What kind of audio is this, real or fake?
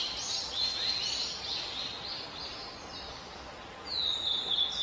real